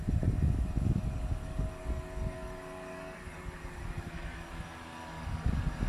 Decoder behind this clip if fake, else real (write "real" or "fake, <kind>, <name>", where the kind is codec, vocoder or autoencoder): fake, codec, DAC